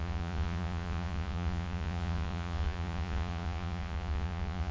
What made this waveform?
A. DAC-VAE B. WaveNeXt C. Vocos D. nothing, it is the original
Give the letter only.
C